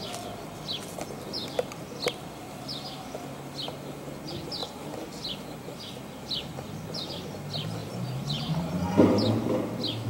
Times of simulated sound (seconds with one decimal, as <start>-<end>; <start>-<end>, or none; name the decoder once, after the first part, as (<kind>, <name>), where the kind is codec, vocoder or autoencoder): 7.8-9.1 (vocoder, BigVGAN v2)